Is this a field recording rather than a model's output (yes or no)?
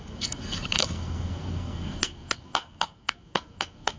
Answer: no